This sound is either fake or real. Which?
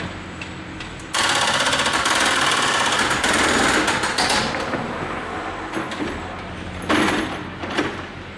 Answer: real